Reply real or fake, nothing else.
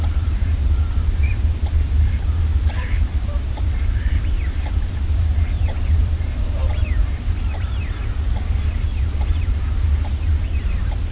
fake